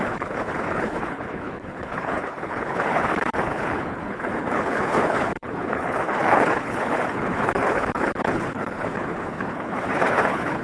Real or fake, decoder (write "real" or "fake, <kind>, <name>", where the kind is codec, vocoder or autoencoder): fake, codec, HILCodec